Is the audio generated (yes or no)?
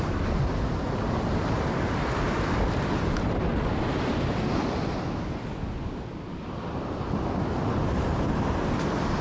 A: no